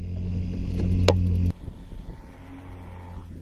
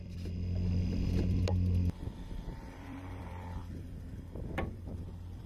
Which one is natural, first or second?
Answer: first